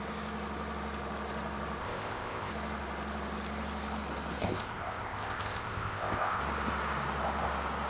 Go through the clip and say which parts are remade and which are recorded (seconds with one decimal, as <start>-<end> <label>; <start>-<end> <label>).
0.0-1.8 recorded; 1.8-2.5 remade; 2.5-4.4 recorded; 4.4-6.4 remade; 6.4-7.9 recorded